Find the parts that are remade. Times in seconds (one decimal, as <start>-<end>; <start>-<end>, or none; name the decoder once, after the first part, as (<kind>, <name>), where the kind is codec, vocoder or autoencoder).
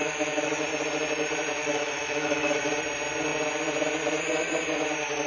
0.0-0.6 (autoencoder, DAC-VAE); 1.6-2.6